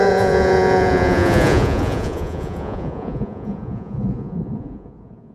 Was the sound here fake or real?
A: fake